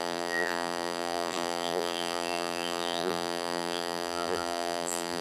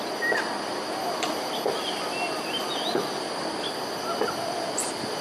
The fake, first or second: first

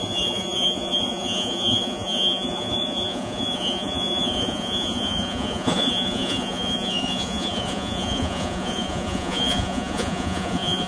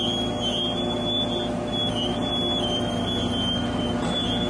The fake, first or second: first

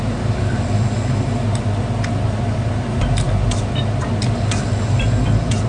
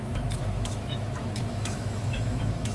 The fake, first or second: second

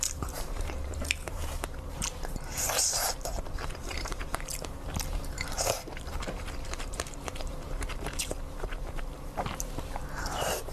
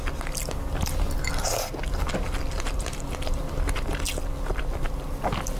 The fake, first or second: first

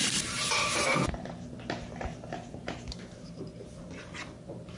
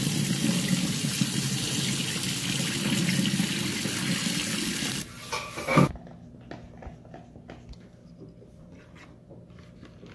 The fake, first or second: first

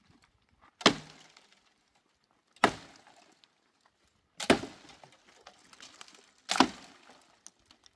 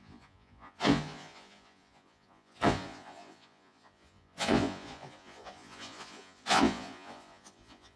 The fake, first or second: second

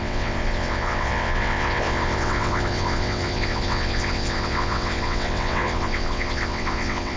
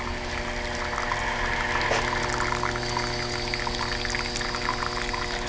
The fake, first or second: first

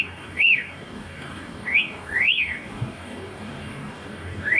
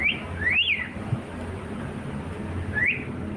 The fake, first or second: first